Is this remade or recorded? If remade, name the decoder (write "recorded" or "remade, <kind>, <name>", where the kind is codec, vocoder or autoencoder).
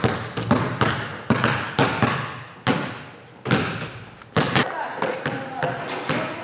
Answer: recorded